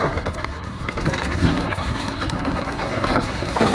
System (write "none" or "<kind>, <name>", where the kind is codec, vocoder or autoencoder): codec, SNAC